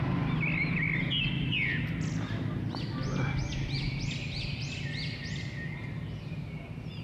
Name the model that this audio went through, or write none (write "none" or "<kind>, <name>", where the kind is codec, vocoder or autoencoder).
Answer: none